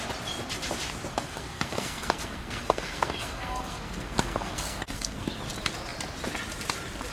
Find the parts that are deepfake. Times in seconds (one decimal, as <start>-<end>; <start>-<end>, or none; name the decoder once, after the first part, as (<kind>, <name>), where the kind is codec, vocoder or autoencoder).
1.1-5.4 (codec, SNAC)